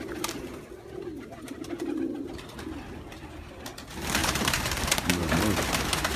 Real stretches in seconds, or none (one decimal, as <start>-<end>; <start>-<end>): 0.0-4.2; 5.2-6.2